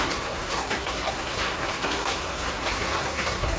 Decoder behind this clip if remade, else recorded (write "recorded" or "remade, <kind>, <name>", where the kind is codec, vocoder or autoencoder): remade, codec, SNAC